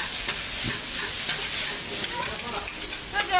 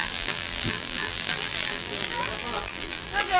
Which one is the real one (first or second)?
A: first